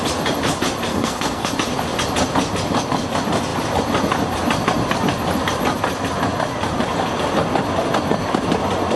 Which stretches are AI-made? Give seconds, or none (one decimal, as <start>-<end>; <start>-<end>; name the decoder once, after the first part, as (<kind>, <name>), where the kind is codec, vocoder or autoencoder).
0.9-1.5 (codec, SNAC)